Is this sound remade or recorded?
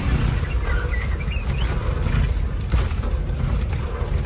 recorded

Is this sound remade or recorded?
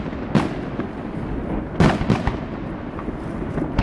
recorded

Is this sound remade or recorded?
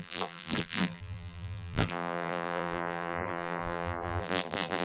remade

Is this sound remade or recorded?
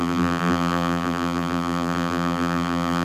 remade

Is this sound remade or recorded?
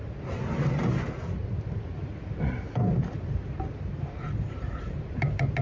recorded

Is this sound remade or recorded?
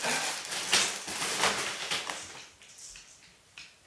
recorded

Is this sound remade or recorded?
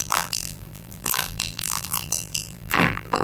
remade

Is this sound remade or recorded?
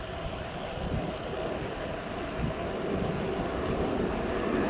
remade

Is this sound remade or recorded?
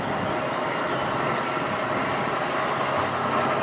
recorded